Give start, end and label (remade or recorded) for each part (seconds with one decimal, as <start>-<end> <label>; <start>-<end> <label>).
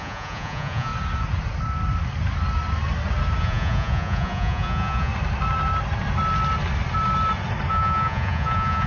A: 0.0-0.9 remade; 0.9-3.4 recorded; 3.4-5.1 remade; 5.1-7.7 recorded; 7.7-8.9 remade